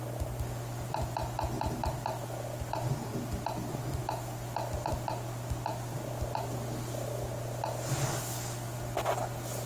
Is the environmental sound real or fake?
real